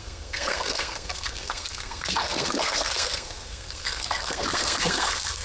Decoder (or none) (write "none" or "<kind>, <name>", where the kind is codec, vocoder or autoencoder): codec, SNAC